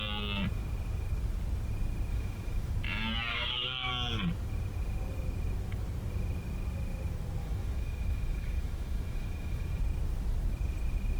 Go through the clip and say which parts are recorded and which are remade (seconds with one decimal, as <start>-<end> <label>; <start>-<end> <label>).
0.0-2.1 recorded; 2.1-2.7 remade; 2.7-3.3 recorded; 3.3-3.9 remade; 3.9-7.4 recorded; 7.4-9.8 remade; 9.8-11.2 recorded